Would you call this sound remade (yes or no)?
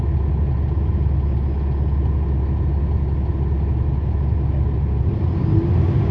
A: no